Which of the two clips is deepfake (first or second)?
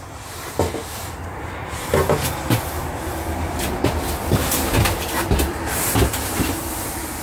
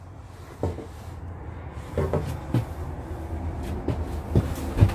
first